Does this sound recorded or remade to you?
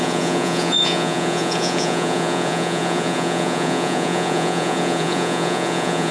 remade